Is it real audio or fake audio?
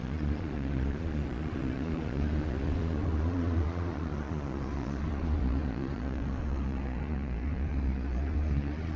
fake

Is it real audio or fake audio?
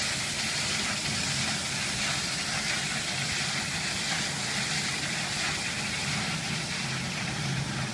real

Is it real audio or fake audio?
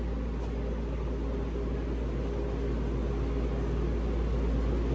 real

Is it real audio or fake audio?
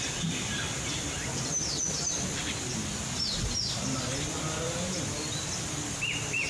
real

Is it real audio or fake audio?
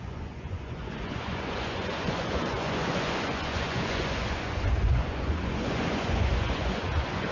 fake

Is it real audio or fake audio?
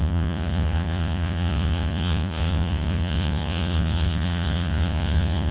fake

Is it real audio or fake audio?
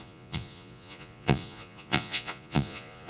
fake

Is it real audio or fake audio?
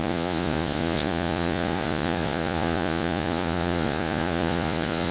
fake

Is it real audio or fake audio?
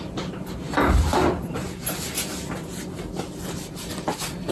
real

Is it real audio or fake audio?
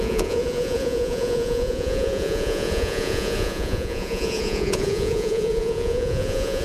fake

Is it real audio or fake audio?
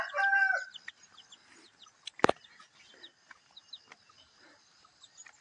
real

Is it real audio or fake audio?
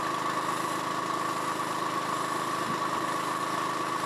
real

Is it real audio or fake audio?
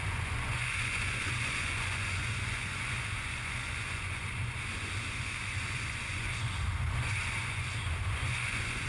fake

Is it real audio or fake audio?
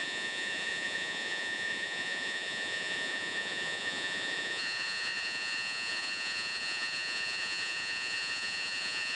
fake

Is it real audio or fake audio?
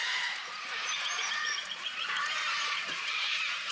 fake